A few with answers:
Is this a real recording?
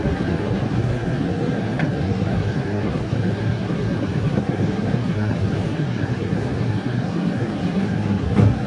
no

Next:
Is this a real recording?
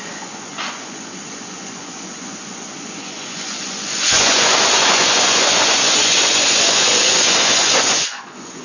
no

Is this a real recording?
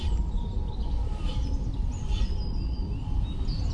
yes